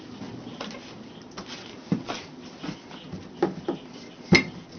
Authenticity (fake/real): real